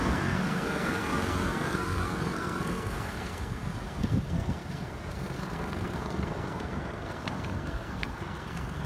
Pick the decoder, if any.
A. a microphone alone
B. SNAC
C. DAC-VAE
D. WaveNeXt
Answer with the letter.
B